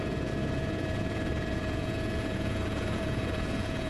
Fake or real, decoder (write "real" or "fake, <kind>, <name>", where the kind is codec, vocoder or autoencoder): fake, vocoder, Vocos